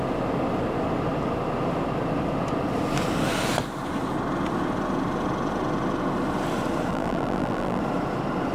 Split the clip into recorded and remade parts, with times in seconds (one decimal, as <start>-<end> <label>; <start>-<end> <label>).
0.0-6.9 recorded; 6.9-7.8 remade; 7.8-8.5 recorded